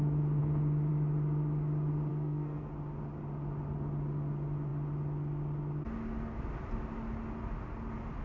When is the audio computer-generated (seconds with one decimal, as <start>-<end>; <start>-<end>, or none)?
2.1-2.7

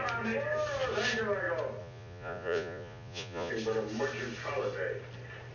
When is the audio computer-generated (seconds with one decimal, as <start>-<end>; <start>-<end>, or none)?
1.8-3.5

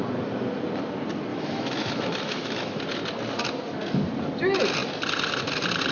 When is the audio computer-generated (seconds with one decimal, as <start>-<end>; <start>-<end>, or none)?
1.3-2.8

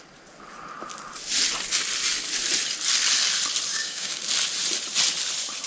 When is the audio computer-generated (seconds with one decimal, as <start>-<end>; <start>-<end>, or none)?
3.7-4.2